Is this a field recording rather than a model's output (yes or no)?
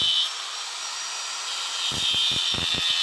yes